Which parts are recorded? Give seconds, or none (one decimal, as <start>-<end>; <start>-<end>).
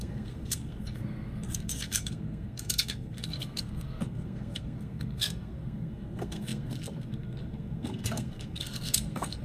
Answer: none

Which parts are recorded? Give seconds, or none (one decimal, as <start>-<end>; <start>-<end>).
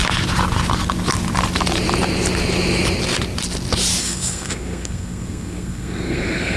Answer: 0.0-4.0